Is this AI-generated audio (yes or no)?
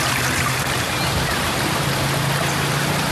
no